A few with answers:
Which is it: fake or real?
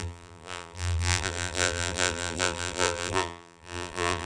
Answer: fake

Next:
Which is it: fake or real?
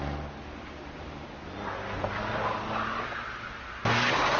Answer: real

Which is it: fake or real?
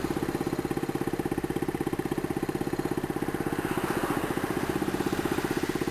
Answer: real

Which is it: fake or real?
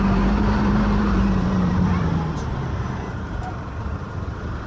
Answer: fake